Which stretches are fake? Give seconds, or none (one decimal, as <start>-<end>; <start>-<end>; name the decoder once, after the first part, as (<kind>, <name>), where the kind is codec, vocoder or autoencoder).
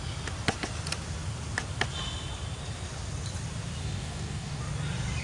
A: 3.8-4.6 (codec, DAC)